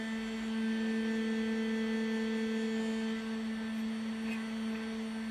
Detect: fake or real real